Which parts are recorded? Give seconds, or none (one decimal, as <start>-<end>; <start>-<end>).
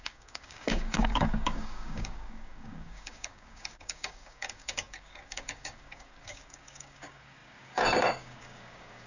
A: none